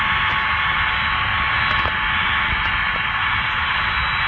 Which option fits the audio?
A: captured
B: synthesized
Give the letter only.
A